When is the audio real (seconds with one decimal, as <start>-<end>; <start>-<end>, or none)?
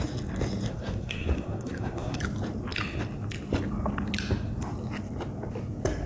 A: 0.0-0.7; 2.2-6.1